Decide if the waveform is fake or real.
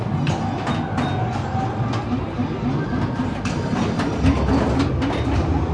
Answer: real